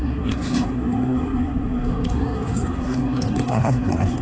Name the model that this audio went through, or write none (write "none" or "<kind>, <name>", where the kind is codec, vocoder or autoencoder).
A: codec, SNAC